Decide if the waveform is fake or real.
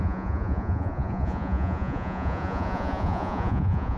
fake